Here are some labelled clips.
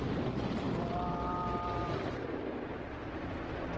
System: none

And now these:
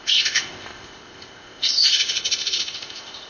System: codec, ZipCodec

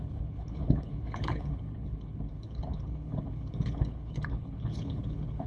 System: codec, HILCodec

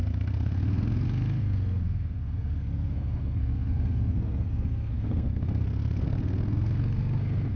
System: codec, SNAC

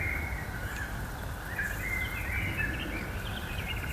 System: none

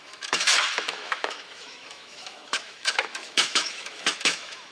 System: autoencoder, DAC-VAE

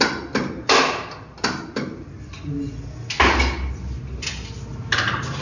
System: none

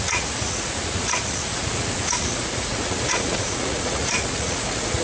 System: vocoder, Vocos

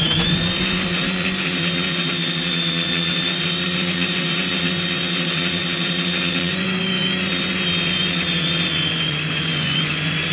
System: vocoder, Vocos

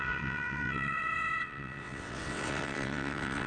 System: vocoder, WaveNeXt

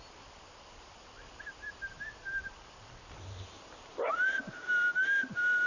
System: none